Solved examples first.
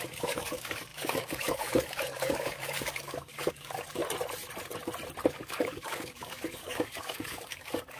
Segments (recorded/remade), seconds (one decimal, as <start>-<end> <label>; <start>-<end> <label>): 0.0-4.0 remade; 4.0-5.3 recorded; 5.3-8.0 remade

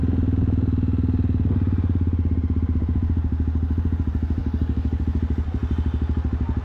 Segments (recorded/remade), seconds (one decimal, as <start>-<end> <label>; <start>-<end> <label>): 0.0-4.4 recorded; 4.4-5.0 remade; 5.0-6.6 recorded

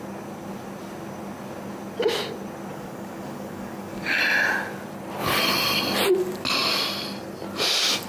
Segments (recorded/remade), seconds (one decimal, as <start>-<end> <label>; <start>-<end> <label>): 0.0-2.7 recorded; 2.7-4.2 remade; 4.2-8.1 recorded